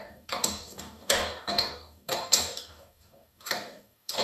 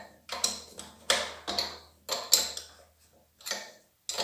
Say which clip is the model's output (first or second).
first